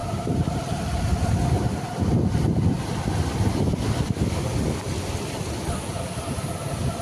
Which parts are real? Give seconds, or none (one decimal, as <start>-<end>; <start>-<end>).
0.0-7.0